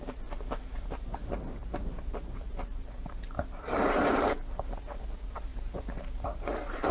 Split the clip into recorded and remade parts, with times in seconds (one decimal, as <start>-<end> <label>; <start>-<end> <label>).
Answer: 0.0-6.9 remade